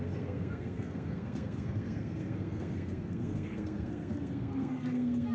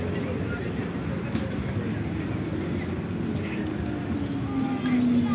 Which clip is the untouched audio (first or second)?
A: second